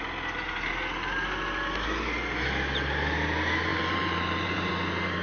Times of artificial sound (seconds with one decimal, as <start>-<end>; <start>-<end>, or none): 3.7-4.7